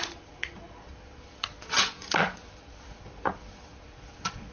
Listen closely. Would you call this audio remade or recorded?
remade